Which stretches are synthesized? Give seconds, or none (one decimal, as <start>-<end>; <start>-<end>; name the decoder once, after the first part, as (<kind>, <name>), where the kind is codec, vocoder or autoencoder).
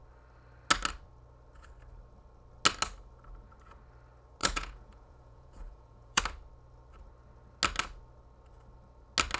4.4-6.2 (vocoder, Vocos)